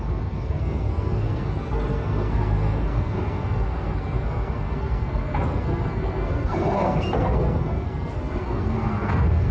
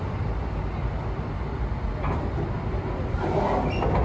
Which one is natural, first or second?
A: second